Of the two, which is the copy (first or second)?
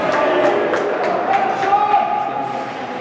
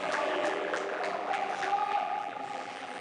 second